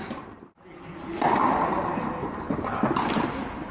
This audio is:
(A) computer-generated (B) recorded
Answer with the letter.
B